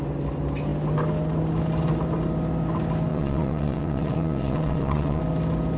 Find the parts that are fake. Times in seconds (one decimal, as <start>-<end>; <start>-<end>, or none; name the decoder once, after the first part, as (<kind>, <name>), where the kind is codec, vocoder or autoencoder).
3.1-5.2 (vocoder, WaveNeXt)